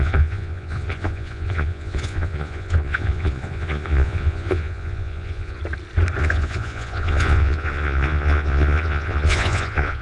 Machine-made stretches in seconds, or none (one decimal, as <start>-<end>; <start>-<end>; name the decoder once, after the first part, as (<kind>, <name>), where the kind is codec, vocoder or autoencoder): 0.0-5.6 (vocoder, Vocos); 6.2-10.0